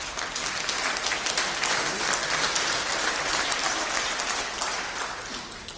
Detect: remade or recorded recorded